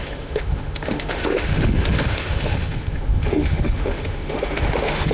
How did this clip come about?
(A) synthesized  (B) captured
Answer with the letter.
A